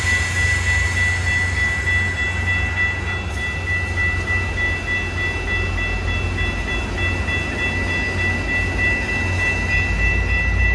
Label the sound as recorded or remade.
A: recorded